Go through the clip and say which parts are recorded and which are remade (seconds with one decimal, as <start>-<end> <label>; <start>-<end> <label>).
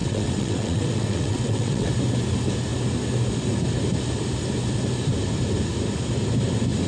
0.0-1.9 remade; 1.9-6.9 recorded